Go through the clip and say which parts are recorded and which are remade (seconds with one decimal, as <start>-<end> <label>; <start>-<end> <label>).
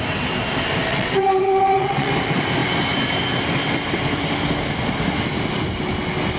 0.0-0.9 recorded; 0.9-2.1 remade; 2.1-6.4 recorded